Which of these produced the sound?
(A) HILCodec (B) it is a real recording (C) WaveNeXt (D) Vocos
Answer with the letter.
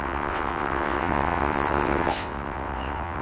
C